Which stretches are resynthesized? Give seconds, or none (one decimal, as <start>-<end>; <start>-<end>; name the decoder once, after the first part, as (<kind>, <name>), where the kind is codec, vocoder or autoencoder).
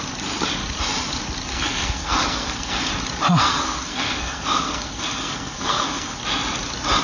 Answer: 1.5-2.9 (codec, SNAC); 3.4-6.2